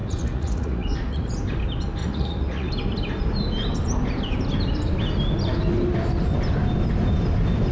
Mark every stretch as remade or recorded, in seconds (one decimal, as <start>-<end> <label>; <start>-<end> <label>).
0.0-1.3 remade; 1.3-2.0 recorded; 2.0-2.7 remade; 2.7-7.7 recorded